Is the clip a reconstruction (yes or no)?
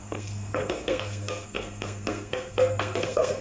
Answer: yes